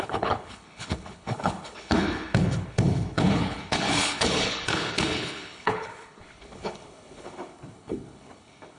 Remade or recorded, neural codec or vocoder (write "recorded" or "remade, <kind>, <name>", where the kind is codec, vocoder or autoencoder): remade, codec, HILCodec